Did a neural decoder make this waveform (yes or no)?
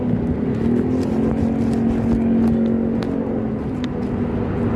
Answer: no